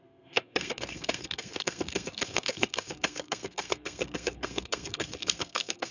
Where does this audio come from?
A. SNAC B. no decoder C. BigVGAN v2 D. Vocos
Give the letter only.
A